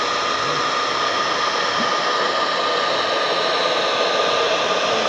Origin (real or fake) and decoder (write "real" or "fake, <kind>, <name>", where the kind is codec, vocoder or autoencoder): real